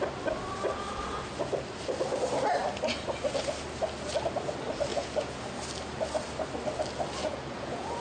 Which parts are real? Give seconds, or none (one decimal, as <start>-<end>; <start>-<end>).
0.0-4.9; 5.4-7.2